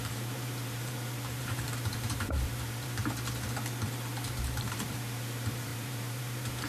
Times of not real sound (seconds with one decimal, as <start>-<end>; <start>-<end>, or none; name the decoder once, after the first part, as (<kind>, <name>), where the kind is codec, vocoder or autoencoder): 0.0-3.0 (vocoder, BigVGAN v2); 4.3-6.7